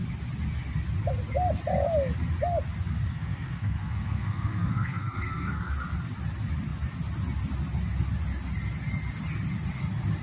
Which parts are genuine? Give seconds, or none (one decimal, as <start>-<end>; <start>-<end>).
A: 0.0-3.1; 5.7-10.2